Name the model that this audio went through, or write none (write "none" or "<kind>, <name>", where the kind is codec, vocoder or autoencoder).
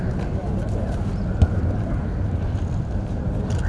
none